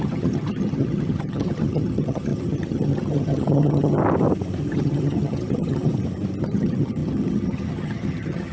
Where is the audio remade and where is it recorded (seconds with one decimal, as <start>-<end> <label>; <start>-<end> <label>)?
0.0-4.0 remade; 4.0-4.7 recorded; 4.7-5.9 remade; 5.9-6.4 recorded; 6.4-8.5 remade